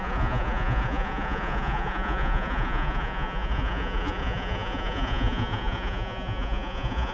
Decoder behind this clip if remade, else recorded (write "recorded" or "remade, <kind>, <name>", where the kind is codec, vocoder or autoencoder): remade, vocoder, Vocos